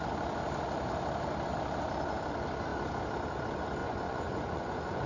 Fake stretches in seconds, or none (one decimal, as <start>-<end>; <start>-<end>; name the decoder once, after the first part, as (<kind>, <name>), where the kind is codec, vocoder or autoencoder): 3.8-5.1 (vocoder, Vocos)